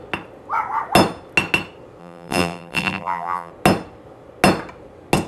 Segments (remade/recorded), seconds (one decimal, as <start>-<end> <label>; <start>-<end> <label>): 0.0-2.0 recorded; 2.0-3.5 remade; 3.5-5.3 recorded